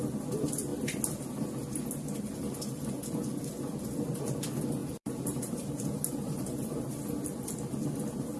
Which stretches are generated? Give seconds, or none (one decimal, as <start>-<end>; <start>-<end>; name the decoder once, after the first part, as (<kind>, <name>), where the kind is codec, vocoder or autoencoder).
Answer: 4.8-6.9 (vocoder, BigVGAN v2)